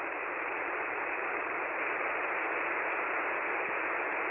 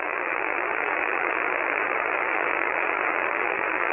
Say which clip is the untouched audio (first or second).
first